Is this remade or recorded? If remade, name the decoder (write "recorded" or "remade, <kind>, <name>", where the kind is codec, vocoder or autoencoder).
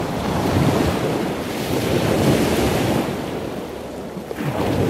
recorded